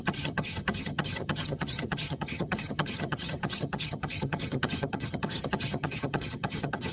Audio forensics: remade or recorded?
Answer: remade